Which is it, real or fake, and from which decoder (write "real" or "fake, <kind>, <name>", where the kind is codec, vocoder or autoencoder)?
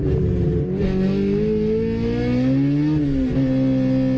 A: real